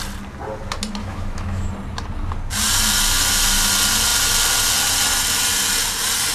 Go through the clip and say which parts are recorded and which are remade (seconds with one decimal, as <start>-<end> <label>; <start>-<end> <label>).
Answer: 0.0-1.0 recorded; 1.0-1.7 remade; 1.7-6.3 recorded

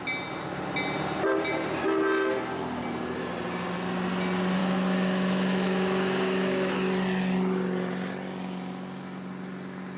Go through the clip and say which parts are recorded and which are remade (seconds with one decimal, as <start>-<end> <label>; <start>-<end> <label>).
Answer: 0.0-4.6 recorded; 4.6-6.7 remade; 6.7-10.0 recorded

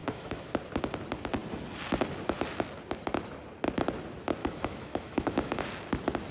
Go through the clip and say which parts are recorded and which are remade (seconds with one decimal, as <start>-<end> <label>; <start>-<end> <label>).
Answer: 0.0-0.5 remade; 0.5-4.4 recorded; 4.4-5.6 remade; 5.6-6.3 recorded

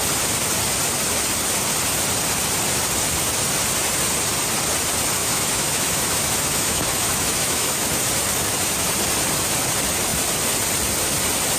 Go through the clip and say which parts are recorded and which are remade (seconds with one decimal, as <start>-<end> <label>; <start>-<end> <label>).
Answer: 0.0-5.2 recorded; 5.2-7.9 remade; 7.9-11.6 recorded

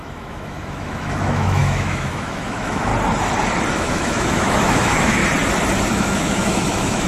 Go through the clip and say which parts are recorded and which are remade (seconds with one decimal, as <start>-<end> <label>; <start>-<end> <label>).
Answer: 0.0-2.9 remade; 2.9-3.7 recorded; 3.7-5.2 remade; 5.2-5.9 recorded; 5.9-7.1 remade

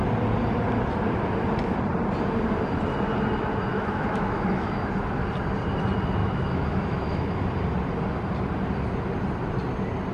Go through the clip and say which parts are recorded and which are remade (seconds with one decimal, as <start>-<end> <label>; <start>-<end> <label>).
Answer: 0.0-3.7 recorded; 3.7-4.8 remade; 4.8-6.2 recorded; 6.2-7.4 remade; 7.4-10.1 recorded

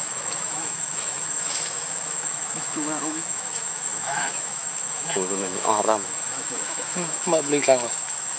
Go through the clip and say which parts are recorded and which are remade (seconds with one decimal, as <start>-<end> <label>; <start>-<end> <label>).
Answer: 0.0-8.4 remade

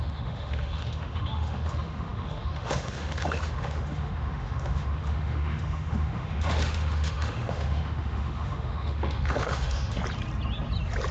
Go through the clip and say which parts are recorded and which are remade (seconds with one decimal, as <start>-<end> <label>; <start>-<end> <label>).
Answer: 0.0-10.0 remade; 10.0-11.1 recorded